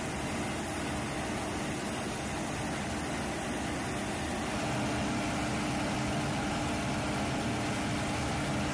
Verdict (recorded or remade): recorded